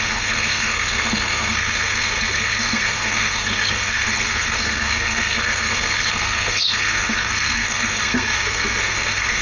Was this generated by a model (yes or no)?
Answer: yes